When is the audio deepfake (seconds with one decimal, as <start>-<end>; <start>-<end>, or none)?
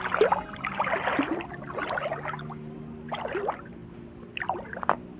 none